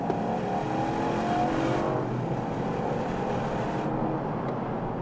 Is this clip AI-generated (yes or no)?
no